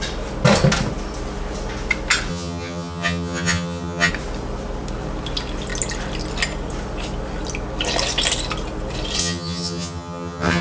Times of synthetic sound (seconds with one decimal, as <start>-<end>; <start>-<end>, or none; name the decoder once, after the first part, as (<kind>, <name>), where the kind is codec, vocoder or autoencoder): 2.3-4.1 (vocoder, HiFi-GAN); 9.2-10.6